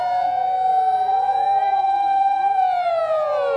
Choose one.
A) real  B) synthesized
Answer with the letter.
B